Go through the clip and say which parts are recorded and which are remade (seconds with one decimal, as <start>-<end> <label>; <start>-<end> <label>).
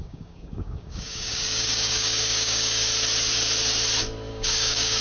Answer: 0.0-2.9 remade; 2.9-4.3 recorded; 4.3-5.0 remade